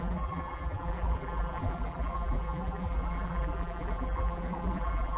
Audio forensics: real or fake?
fake